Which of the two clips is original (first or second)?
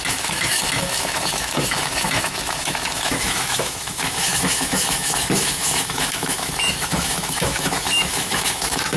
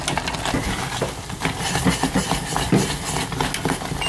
second